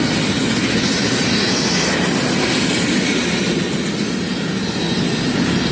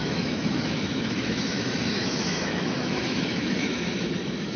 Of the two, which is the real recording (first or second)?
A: first